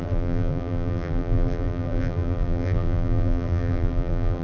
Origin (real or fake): fake